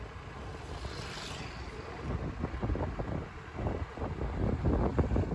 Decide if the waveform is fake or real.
real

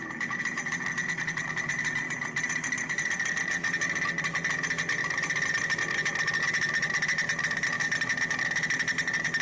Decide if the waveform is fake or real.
real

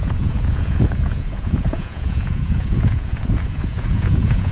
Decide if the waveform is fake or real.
fake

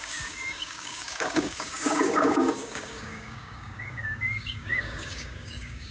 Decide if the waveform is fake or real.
fake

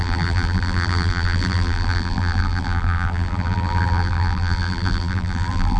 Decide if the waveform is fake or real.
fake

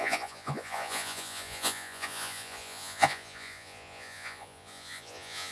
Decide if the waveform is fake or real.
fake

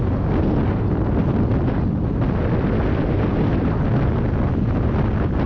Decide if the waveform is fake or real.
real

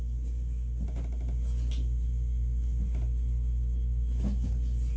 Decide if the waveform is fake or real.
real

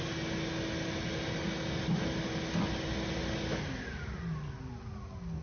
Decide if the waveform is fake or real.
real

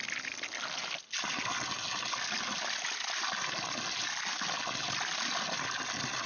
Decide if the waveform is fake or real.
real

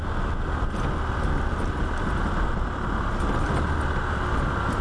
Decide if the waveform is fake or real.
real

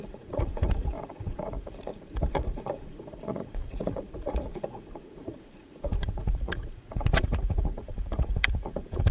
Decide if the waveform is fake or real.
fake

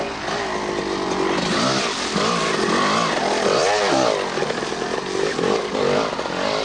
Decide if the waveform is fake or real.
real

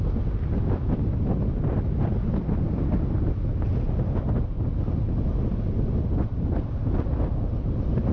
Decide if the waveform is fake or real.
real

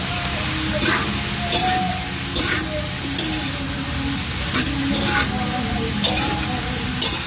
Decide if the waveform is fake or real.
real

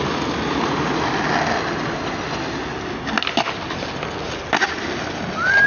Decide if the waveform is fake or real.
real